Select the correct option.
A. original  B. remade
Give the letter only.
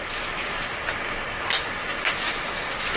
A